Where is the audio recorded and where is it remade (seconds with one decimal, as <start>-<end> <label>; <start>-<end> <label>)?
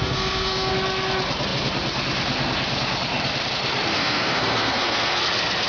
0.0-0.7 remade; 0.7-3.9 recorded; 3.9-5.2 remade; 5.2-5.7 recorded